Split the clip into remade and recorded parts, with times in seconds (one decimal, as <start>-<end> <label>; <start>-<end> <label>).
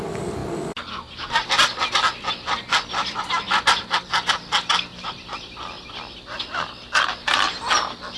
0.0-7.2 recorded; 7.2-7.7 remade; 7.7-8.2 recorded